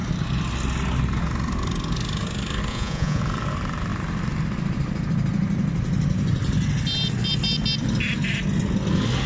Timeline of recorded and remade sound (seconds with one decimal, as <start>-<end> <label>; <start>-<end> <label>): 0.0-2.7 recorded; 2.7-3.2 remade; 3.2-9.3 recorded